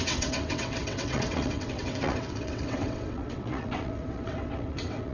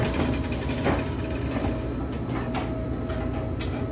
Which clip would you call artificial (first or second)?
first